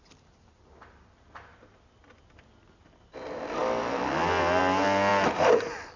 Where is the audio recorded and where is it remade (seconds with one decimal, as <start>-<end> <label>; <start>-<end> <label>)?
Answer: 0.0-6.0 recorded

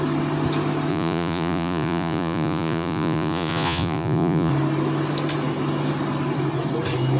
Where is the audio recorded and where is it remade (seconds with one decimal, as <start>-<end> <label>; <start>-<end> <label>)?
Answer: 0.0-0.9 recorded; 0.9-4.5 remade; 4.5-7.2 recorded

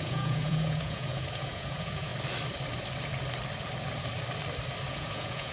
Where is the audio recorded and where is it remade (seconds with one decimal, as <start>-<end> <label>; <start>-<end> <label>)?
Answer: 0.0-2.1 remade; 2.1-4.9 recorded; 4.9-5.5 remade

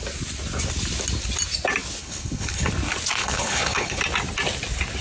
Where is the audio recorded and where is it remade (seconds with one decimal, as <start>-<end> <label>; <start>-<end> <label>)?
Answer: 0.0-2.0 recorded; 2.0-2.7 remade; 2.7-3.2 recorded; 3.2-4.0 remade; 4.0-5.0 recorded